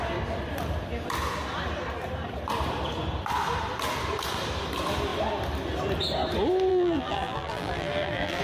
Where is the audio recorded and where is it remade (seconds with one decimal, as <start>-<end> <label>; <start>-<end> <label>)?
0.0-6.7 recorded; 6.7-8.4 remade